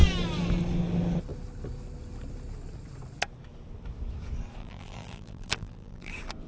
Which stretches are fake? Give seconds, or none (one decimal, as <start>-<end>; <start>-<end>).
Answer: 4.6-6.1